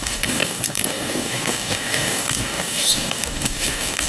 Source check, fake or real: fake